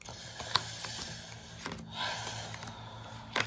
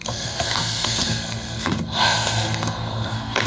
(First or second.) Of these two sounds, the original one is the first